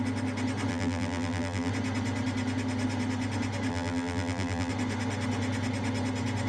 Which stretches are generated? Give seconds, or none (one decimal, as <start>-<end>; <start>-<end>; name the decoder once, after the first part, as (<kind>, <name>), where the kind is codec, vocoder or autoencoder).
0.7-1.7 (vocoder, BigVGAN v2); 3.7-4.7